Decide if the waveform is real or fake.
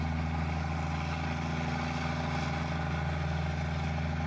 real